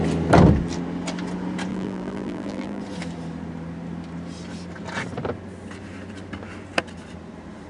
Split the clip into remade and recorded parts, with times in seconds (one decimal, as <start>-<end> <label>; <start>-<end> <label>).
0.0-1.7 recorded; 1.7-2.8 remade; 2.8-7.7 recorded